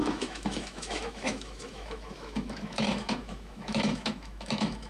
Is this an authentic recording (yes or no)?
no